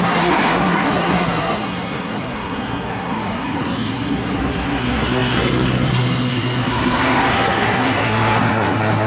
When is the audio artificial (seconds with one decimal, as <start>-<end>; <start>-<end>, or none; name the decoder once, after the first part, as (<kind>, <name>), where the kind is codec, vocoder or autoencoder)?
0.0-9.1 (codec, SNAC)